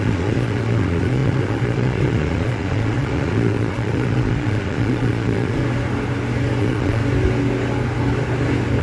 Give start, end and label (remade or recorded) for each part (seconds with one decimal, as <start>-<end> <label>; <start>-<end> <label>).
0.0-5.6 remade; 5.6-6.6 recorded; 6.6-7.0 remade; 7.0-8.8 recorded